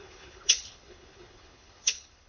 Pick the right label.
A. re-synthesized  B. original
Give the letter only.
A